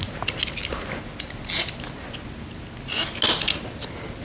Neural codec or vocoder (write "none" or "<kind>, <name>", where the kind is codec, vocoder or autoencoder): none